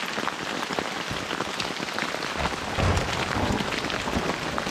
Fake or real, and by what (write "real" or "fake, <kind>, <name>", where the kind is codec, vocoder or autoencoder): real